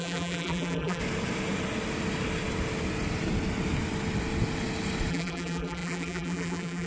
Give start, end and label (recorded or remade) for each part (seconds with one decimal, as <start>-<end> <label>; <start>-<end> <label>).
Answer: 0.0-1.0 remade; 1.0-5.1 recorded; 5.1-6.9 remade